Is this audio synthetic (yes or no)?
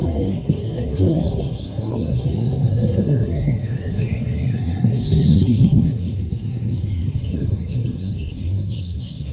yes